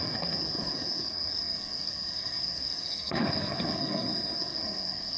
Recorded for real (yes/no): no